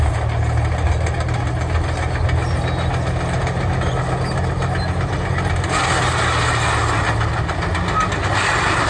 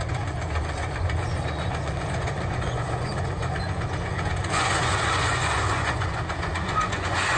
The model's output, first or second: second